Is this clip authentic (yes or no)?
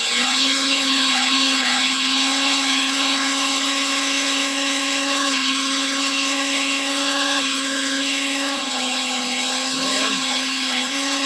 no